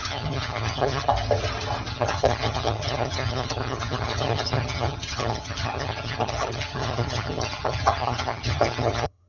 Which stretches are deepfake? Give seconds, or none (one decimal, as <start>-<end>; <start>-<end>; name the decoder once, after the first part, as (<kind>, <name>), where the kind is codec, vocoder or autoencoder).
0.0-1.1 (vocoder, HiFi-GAN); 1.9-9.3